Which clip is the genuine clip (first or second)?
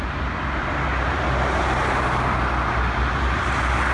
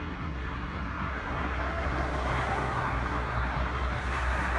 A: first